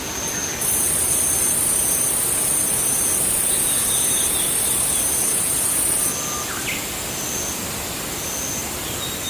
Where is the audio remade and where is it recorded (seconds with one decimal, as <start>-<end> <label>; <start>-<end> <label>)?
0.0-9.3 recorded